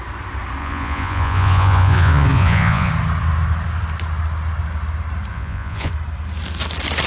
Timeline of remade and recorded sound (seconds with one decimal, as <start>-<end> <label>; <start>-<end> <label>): 0.0-0.6 recorded; 0.6-2.9 remade; 2.9-5.3 recorded; 5.3-5.9 remade; 5.9-7.1 recorded